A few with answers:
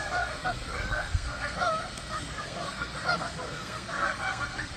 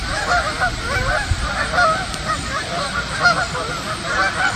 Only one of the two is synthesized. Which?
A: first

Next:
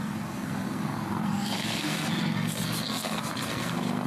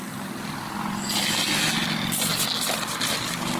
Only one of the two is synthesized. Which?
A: first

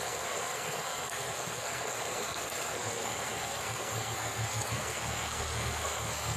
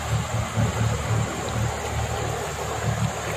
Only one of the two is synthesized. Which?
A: first